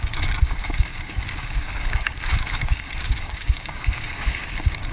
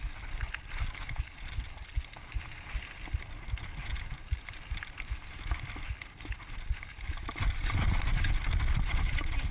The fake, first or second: first